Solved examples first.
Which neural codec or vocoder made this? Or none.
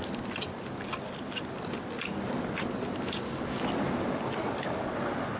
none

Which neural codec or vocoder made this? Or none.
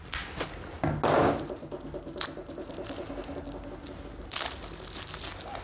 none